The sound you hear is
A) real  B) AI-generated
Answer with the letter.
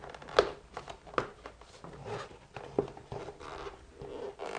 A